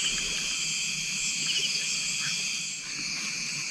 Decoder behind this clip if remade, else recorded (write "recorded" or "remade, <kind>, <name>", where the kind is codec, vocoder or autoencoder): recorded